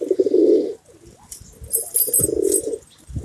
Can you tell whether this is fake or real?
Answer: real